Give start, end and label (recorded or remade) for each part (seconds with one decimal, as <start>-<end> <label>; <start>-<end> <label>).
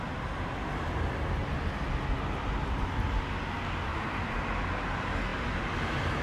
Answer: 0.0-3.9 recorded; 3.9-4.6 remade; 4.6-6.2 recorded